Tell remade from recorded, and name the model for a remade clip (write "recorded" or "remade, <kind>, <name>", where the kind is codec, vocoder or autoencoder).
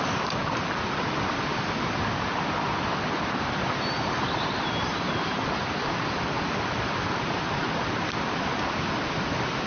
recorded